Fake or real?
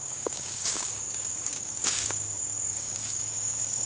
fake